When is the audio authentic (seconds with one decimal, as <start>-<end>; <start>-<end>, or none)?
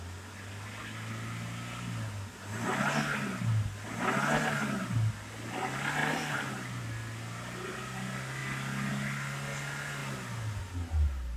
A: 0.0-6.0; 6.8-11.4